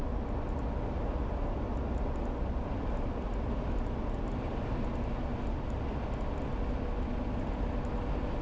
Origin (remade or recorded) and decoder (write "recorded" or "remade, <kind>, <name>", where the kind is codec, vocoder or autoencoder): recorded